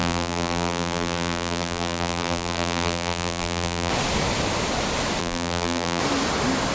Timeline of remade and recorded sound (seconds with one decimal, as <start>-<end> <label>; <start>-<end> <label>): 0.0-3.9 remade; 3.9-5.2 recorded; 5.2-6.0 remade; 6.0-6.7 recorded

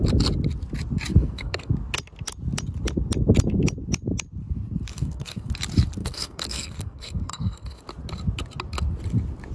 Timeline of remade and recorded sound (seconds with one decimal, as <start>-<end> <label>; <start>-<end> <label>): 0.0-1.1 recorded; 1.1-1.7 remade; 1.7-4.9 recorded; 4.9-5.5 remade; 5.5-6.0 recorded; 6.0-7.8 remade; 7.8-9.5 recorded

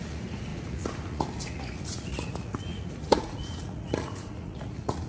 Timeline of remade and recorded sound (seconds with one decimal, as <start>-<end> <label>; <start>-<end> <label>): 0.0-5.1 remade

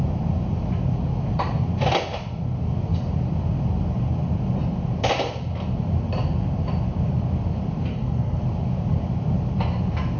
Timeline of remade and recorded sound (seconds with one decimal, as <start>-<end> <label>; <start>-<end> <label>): 0.0-7.9 recorded; 7.9-8.4 remade; 8.4-10.2 recorded

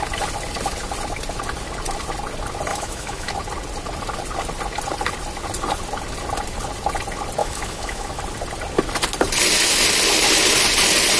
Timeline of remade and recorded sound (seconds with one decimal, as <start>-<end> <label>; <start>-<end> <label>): 0.0-2.7 recorded; 2.7-3.3 remade; 3.3-7.4 recorded; 7.4-8.2 remade; 8.2-11.2 recorded

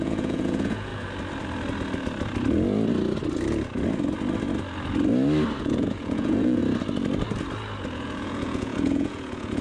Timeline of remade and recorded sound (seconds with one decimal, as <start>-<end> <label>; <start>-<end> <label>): 0.0-0.9 remade; 0.9-5.6 recorded; 5.6-6.6 remade; 6.6-7.9 recorded; 7.9-9.6 remade